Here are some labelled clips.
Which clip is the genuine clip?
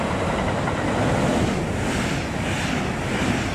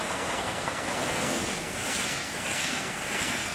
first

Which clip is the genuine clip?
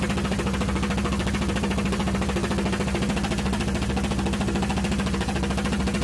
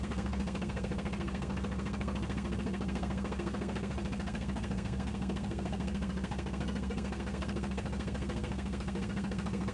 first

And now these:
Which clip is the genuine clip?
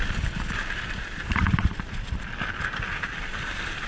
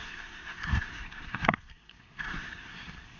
first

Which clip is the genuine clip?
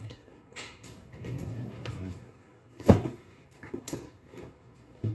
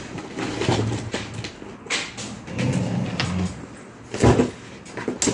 second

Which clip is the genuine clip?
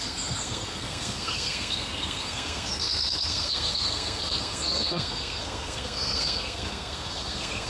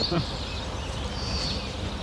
second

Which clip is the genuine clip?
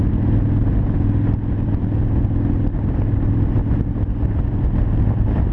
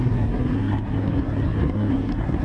first